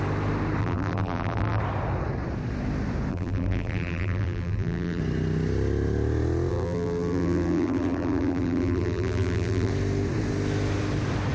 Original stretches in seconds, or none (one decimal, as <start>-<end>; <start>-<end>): 0.0-0.6; 1.6-3.1; 5.0-6.5; 9.7-11.3